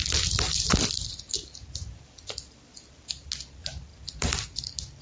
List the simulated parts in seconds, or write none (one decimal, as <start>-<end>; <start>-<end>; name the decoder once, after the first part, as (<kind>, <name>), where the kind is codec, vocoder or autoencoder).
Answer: none